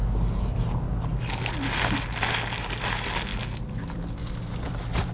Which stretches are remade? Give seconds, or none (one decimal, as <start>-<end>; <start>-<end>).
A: none